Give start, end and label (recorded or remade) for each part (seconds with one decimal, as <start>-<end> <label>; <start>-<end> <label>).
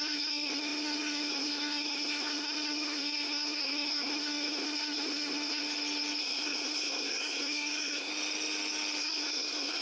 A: 0.0-5.6 remade; 5.6-6.2 recorded; 6.2-8.1 remade; 8.1-9.0 recorded; 9.0-9.8 remade